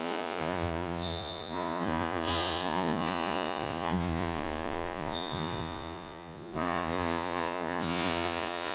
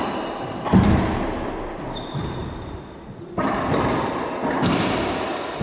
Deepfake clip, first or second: first